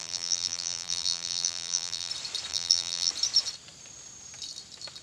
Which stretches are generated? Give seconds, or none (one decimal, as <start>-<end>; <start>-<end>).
0.0-2.1; 2.5-3.1